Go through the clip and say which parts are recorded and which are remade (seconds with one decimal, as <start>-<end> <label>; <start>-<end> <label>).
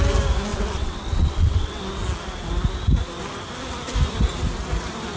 0.0-0.5 recorded; 0.5-1.8 remade; 1.8-5.2 recorded